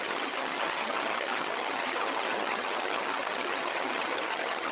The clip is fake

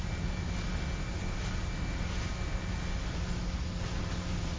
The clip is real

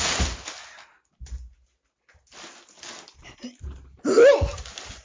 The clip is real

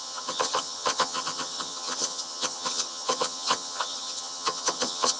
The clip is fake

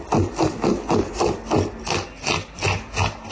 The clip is real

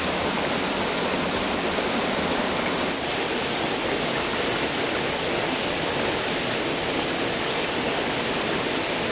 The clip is real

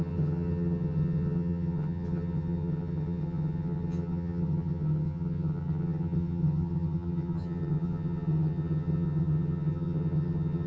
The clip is fake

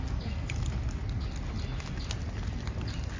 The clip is real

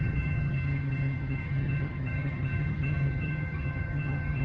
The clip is fake